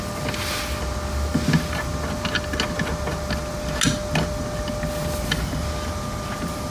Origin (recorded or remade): recorded